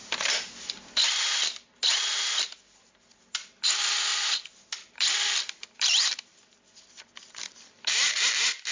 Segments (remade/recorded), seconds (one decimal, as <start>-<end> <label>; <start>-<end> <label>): 0.0-2.8 remade; 2.8-4.1 recorded; 4.1-7.4 remade; 7.4-8.7 recorded